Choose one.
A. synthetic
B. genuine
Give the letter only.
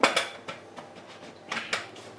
B